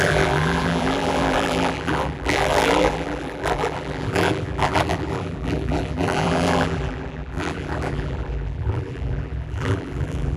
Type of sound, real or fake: fake